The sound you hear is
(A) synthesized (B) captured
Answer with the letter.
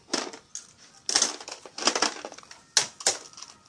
B